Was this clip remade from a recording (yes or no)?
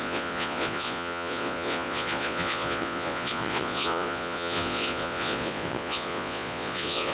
yes